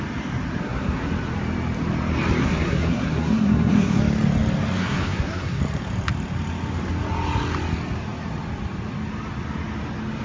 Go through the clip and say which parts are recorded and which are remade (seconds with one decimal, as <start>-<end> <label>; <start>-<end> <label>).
0.0-0.6 recorded; 0.6-1.1 remade; 1.1-2.4 recorded; 2.4-4.0 remade; 4.0-4.8 recorded; 4.8-5.6 remade; 5.6-10.2 recorded